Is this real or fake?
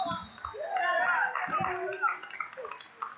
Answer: real